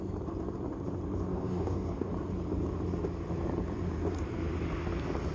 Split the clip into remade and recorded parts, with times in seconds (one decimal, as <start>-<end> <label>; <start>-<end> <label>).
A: 0.0-1.3 recorded; 1.3-2.1 remade; 2.1-5.3 recorded